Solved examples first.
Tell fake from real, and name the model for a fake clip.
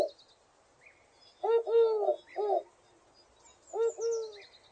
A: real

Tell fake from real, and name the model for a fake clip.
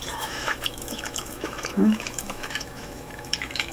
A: fake, autoencoder, DAC-VAE